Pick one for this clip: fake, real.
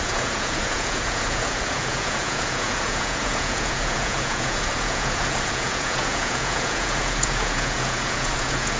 fake